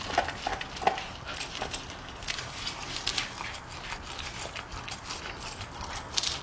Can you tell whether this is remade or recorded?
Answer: recorded